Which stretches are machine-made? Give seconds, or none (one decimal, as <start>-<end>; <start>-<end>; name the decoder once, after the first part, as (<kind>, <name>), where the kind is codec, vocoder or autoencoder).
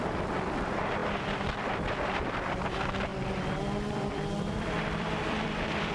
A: 0.0-3.1 (vocoder, BigVGAN v2); 3.9-5.9